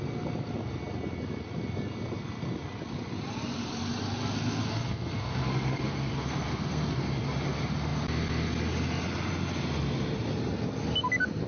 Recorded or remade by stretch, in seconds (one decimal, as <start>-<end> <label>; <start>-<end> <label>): 0.0-4.2 recorded; 4.2-7.0 remade; 7.0-11.5 recorded